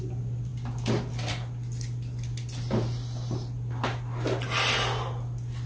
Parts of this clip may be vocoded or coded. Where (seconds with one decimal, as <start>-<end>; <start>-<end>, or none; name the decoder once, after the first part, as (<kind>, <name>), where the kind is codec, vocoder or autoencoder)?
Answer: none